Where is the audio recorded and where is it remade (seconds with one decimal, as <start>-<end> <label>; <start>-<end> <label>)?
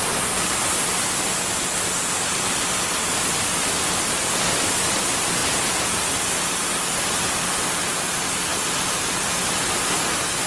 0.0-10.5 recorded